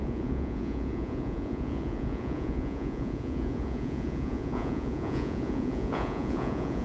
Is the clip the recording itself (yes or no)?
no